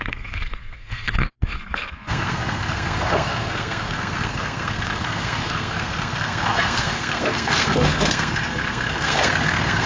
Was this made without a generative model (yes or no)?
no